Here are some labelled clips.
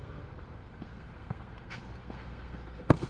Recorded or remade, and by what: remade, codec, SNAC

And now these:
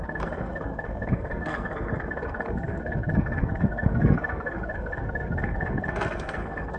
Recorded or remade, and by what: remade, codec, SNAC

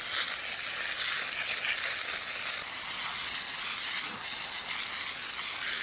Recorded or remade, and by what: recorded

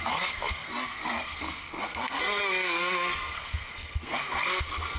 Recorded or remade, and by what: remade, codec, SNAC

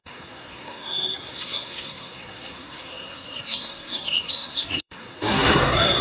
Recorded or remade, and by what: remade, codec, SNAC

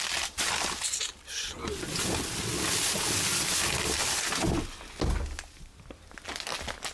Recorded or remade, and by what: recorded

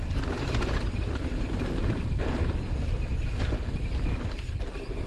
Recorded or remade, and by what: recorded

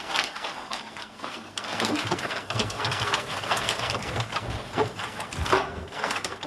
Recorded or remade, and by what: remade, codec, SNAC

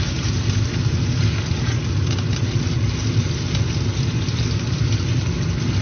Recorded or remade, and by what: recorded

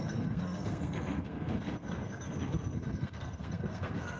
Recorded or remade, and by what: remade, codec, SNAC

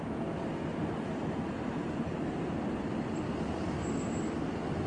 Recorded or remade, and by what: recorded